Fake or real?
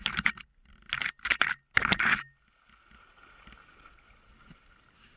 real